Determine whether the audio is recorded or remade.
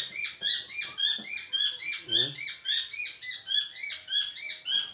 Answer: recorded